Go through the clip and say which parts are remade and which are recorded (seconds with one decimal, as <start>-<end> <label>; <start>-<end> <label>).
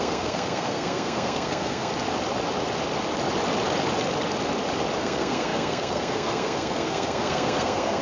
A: 0.0-1.9 remade; 1.9-5.0 recorded; 5.0-8.0 remade